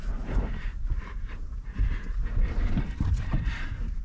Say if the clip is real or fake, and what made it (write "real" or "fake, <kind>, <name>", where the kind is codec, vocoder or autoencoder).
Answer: fake, vocoder, BigVGAN v2